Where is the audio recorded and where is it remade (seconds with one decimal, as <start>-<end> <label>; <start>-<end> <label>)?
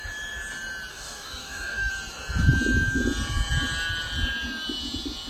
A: 0.0-0.9 recorded; 0.9-1.9 remade; 1.9-5.3 recorded